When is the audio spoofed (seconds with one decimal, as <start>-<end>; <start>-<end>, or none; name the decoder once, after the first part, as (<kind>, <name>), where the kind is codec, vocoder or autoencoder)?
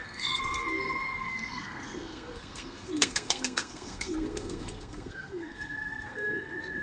0.0-6.8 (codec, SNAC)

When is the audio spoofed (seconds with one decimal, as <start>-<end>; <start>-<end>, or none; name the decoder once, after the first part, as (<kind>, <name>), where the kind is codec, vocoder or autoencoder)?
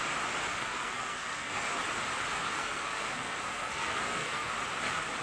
0.5-1.8 (codec, SNAC); 2.4-4.5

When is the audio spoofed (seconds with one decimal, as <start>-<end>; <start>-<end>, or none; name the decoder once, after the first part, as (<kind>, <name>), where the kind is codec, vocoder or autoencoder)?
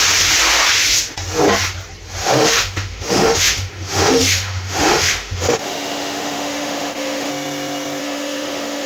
2.2-7.3 (autoencoder, DAC-VAE); 8.0-8.9